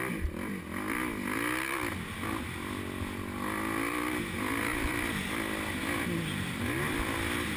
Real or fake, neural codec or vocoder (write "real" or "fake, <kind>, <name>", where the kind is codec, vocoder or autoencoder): real